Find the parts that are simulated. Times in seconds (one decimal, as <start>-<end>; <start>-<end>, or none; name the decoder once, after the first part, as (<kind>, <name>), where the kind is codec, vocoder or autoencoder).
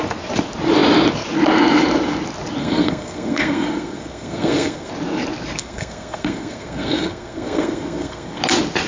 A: 2.6-4.9 (codec, SNAC); 5.6-8.4